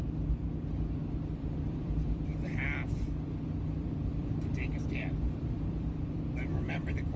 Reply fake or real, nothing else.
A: fake